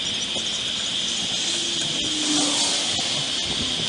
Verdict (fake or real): real